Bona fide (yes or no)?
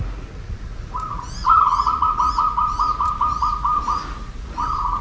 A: no